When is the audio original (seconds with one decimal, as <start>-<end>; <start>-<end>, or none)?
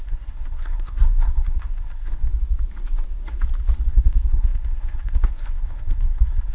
2.3-3.9